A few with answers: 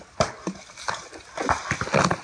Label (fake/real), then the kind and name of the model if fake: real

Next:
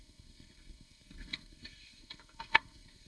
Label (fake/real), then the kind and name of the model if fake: fake, codec, SNAC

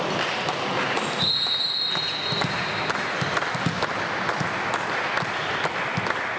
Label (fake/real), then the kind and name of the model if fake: real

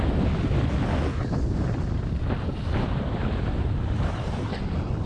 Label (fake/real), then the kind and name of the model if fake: real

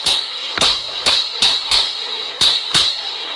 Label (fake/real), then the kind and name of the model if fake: fake, codec, SNAC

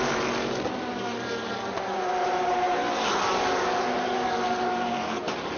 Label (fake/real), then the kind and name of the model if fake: fake, vocoder, BigVGAN v2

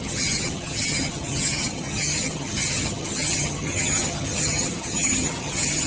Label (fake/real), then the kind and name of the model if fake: fake, vocoder, HiFi-GAN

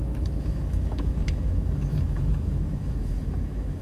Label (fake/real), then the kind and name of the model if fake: fake, autoencoder, DAC-VAE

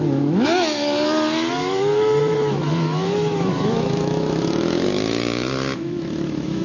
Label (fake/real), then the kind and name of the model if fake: fake, autoencoder, DAC-VAE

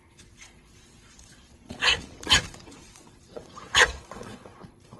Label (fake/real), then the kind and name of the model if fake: fake, vocoder, Vocos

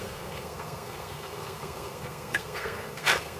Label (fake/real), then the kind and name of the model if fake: fake, codec, SNAC